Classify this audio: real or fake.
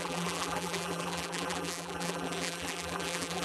fake